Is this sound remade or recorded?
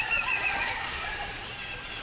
remade